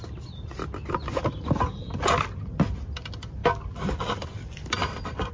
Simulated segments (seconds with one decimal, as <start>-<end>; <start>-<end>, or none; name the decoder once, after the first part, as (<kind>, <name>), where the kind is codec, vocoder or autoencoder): none